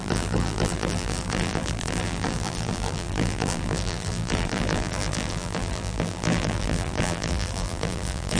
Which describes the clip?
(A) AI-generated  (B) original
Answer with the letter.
A